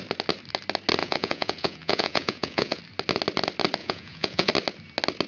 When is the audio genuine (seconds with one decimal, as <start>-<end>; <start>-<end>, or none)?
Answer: 0.0-1.0; 2.8-3.8; 4.5-5.3